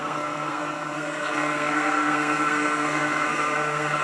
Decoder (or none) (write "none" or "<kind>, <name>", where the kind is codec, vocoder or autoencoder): codec, SNAC